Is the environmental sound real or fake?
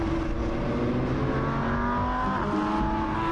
real